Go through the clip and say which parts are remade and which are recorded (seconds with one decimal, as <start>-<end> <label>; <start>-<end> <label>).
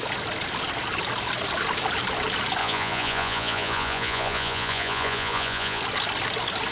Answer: 0.0-2.6 recorded; 2.6-5.8 remade; 5.8-6.7 recorded